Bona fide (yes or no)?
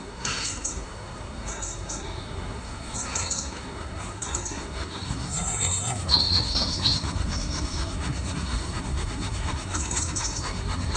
no